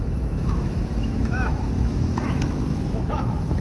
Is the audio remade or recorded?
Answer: remade